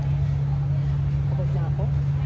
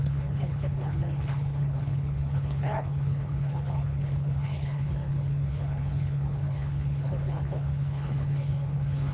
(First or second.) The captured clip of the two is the first